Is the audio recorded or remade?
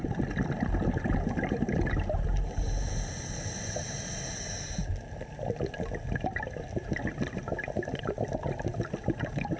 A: recorded